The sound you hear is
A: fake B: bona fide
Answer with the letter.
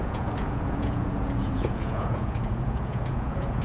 A